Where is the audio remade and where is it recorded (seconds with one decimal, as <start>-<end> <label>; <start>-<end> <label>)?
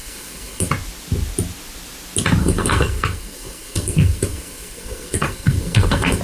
0.0-0.7 remade; 0.7-2.4 recorded; 2.4-6.2 remade